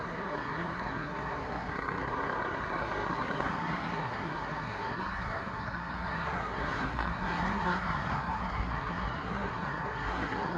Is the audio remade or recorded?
remade